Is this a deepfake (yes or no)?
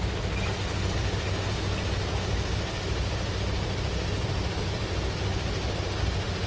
no